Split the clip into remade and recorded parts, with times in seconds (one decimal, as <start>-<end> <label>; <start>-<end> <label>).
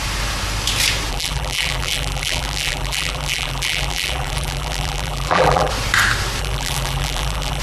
0.0-1.1 recorded; 1.1-5.7 remade; 5.7-6.4 recorded; 6.4-7.6 remade